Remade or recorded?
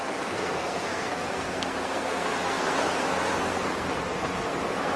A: remade